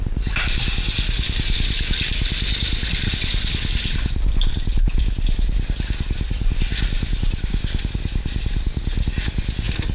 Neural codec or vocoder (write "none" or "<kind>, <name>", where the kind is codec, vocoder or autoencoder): none